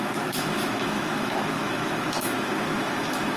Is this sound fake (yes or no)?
yes